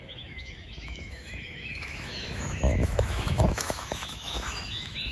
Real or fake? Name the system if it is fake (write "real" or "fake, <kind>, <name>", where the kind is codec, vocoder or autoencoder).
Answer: fake, autoencoder, DAC-VAE